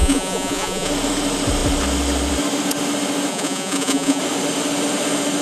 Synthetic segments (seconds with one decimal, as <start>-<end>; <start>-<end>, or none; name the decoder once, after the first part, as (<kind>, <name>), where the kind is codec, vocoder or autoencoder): 0.0-0.9 (vocoder, Vocos); 3.3-4.2